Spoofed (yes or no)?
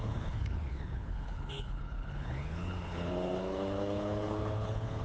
yes